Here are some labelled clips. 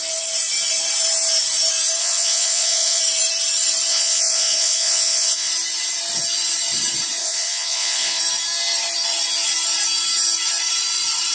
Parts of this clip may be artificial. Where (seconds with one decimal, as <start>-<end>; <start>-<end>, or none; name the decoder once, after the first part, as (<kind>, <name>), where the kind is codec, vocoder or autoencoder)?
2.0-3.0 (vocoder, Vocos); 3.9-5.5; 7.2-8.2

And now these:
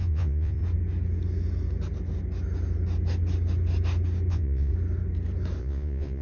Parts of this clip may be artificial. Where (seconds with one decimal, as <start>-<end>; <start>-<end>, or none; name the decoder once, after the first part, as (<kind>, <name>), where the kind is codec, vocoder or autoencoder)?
0.0-0.6 (vocoder, Vocos); 4.3-4.7; 5.6-6.2

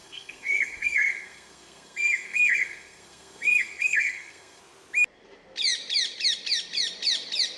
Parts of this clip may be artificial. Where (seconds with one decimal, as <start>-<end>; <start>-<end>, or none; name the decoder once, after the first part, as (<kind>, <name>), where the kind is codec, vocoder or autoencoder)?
0.0-4.6 (codec, SNAC)